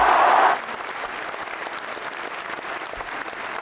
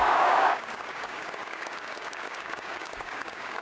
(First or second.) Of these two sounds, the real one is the first